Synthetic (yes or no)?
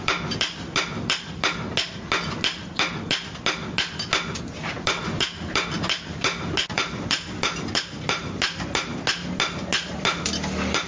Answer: no